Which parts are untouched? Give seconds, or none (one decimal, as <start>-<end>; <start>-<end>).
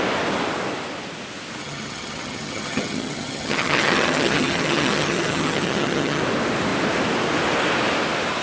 0.0-1.6; 6.2-8.4